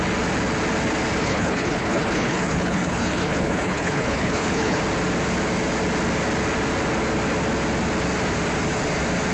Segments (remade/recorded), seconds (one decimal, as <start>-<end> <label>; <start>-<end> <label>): 0.0-1.2 recorded; 1.2-4.8 remade; 4.8-9.3 recorded